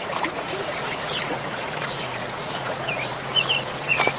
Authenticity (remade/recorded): remade